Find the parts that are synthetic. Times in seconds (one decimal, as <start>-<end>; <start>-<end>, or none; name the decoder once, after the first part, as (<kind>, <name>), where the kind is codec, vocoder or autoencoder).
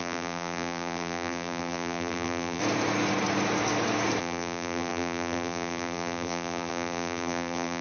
0.0-2.6 (vocoder, BigVGAN v2); 4.2-7.8